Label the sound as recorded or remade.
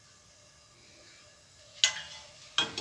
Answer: recorded